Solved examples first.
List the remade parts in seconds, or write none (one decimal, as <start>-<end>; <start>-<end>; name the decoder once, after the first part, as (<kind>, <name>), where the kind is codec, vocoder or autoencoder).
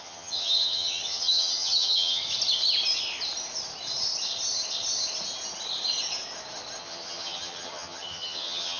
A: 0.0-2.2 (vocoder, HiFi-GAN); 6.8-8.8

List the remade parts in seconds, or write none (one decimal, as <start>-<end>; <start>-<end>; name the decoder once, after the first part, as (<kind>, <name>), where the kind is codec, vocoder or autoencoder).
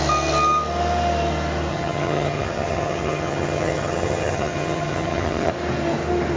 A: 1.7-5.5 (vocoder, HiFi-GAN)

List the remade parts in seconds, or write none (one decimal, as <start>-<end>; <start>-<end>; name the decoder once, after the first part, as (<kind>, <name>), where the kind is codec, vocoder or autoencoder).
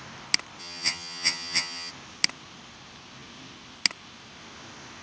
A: 0.6-1.9 (vocoder, HiFi-GAN)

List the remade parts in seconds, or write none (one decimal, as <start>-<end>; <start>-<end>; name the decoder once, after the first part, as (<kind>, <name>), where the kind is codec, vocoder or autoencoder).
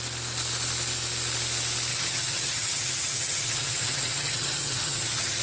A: 1.9-5.4 (vocoder, HiFi-GAN)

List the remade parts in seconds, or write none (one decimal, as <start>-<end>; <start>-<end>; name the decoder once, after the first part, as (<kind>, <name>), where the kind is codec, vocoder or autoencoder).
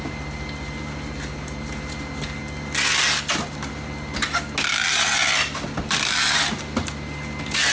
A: none